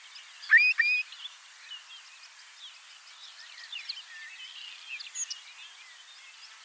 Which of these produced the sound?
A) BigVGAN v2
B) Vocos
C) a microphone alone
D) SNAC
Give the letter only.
C